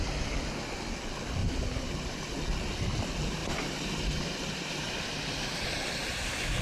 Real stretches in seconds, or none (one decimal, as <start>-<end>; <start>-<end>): 0.0-1.4; 2.1-3.4